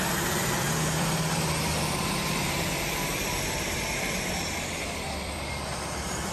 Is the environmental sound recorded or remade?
remade